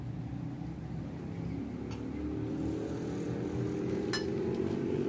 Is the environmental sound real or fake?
real